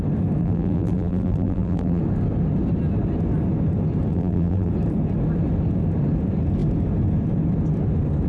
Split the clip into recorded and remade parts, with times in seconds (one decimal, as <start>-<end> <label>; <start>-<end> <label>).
0.0-0.4 recorded; 0.4-2.0 remade; 2.0-4.1 recorded; 4.1-4.7 remade; 4.7-8.3 recorded